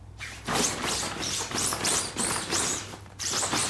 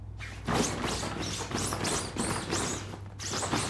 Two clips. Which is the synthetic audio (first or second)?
first